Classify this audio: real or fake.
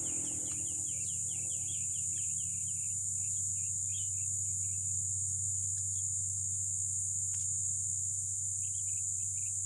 real